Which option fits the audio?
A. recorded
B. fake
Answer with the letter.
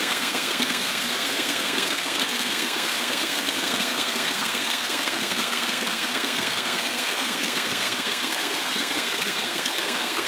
B